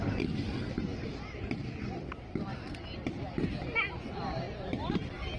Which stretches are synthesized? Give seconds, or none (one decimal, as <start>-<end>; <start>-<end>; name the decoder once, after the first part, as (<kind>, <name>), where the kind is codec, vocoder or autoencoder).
0.9-3.2 (vocoder, BigVGAN v2)